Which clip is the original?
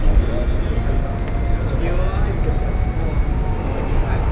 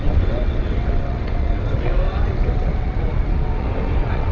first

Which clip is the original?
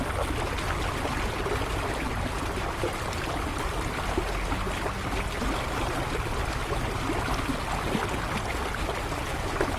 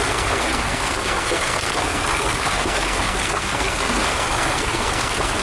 first